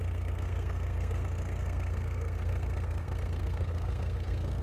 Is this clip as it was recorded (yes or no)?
no